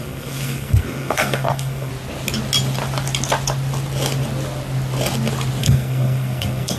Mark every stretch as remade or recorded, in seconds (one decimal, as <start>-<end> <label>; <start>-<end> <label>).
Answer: 0.0-1.9 remade; 1.9-5.6 recorded; 5.6-6.8 remade